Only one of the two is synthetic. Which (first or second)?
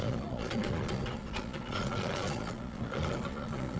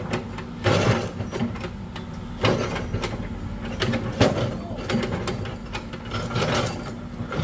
first